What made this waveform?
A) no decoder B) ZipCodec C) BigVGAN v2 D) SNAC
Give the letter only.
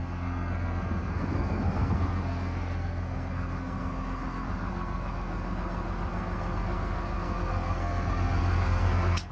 D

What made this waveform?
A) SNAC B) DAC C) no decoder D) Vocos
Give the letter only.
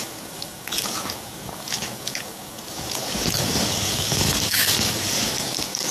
B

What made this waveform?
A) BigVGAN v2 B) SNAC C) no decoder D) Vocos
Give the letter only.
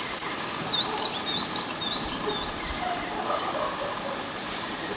C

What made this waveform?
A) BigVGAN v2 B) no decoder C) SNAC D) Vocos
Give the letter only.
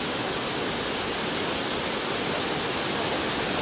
B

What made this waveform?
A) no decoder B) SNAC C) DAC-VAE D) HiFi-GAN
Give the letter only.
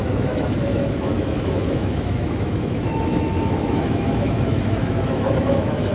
C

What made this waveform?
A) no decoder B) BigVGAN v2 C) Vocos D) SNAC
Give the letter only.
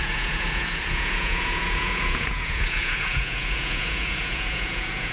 C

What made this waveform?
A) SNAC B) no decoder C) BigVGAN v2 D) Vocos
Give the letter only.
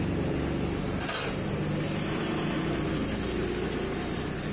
B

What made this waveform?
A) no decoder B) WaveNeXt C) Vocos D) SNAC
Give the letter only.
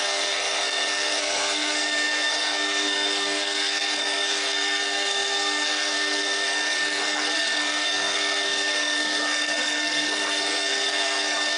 D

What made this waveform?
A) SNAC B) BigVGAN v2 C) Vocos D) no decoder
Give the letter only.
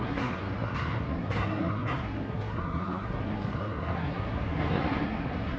A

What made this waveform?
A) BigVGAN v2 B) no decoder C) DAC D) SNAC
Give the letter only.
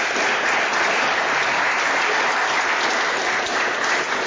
B